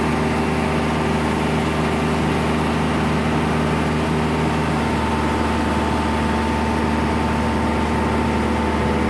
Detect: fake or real real